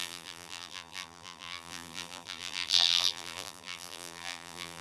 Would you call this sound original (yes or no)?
no